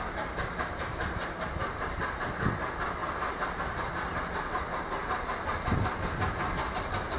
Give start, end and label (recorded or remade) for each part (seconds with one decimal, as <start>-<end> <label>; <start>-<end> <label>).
0.0-7.2 recorded